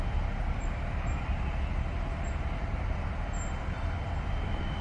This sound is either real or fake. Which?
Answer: real